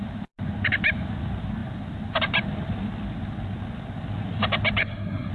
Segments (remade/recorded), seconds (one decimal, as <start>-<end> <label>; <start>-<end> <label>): 0.0-4.8 recorded; 4.8-5.3 remade